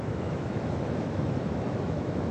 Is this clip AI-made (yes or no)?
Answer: yes